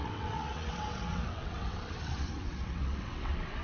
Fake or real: fake